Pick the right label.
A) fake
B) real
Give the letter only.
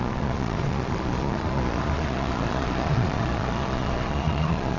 A